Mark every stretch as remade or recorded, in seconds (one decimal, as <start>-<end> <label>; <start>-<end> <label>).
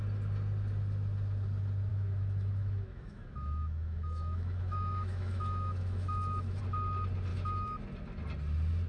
0.0-1.9 recorded; 1.9-6.6 remade; 6.6-7.3 recorded; 7.3-7.8 remade; 7.8-8.9 recorded